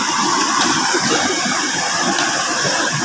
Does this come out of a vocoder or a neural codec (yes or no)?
yes